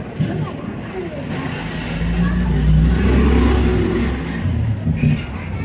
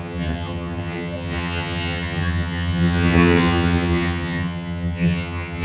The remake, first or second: second